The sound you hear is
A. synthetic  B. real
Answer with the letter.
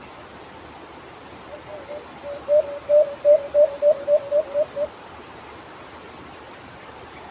B